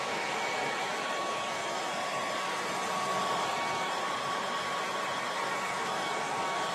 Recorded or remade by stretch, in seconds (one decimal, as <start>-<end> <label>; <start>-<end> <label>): 0.0-1.9 remade; 1.9-5.6 recorded; 5.6-6.7 remade